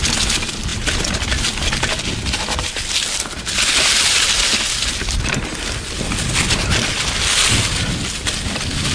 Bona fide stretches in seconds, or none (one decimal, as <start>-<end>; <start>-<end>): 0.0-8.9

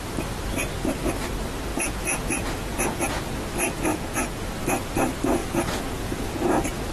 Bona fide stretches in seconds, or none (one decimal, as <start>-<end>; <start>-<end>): 0.0-1.7; 3.3-3.9; 4.4-5.4

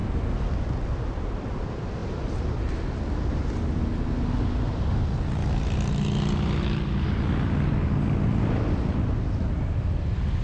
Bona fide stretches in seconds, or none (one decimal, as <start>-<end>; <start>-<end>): 0.0-10.4